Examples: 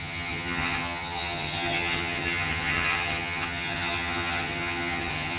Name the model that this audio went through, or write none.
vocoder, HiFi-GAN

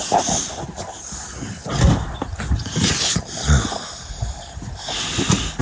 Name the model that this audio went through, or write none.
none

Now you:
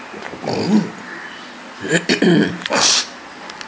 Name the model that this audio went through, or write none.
none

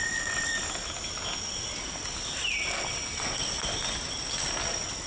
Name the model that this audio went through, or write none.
none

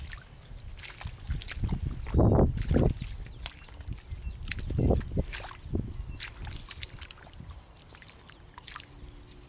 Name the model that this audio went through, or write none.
none